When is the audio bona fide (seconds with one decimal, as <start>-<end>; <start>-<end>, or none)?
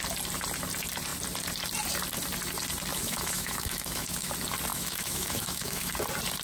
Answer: 0.0-2.9; 4.3-4.7; 5.9-6.4